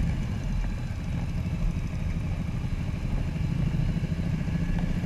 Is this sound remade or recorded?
recorded